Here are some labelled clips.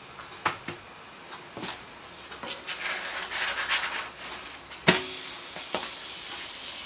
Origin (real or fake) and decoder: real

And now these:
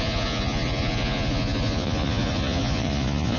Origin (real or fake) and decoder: fake, vocoder, Vocos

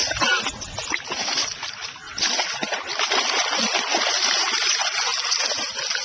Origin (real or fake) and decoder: real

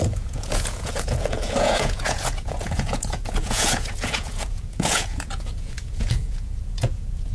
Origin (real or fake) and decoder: fake, vocoder, Vocos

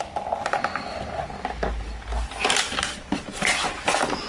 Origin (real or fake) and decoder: real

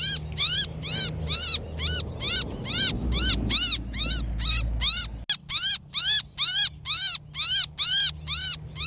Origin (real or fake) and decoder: real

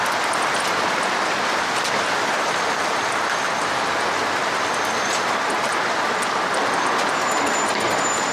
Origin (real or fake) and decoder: real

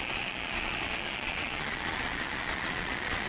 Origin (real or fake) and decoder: fake, vocoder, Vocos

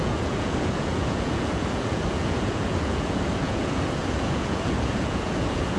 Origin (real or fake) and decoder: fake, vocoder, Vocos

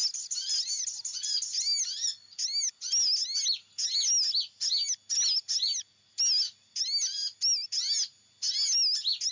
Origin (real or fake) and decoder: real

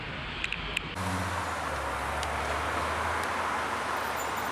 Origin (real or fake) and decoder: real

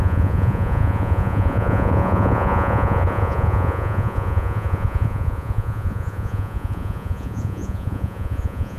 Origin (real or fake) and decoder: fake, vocoder, Vocos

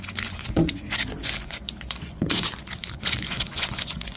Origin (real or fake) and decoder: fake, vocoder, Vocos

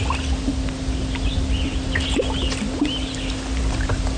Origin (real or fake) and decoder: real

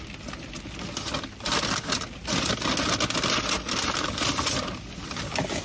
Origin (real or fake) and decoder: real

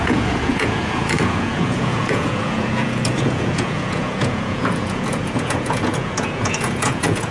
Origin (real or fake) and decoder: fake, vocoder, Vocos